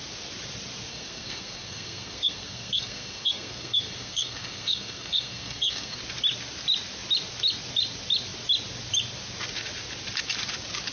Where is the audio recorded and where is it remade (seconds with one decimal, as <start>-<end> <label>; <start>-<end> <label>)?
0.0-0.9 recorded; 0.9-6.0 remade; 6.0-10.9 recorded